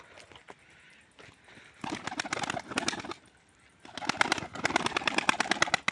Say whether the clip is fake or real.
real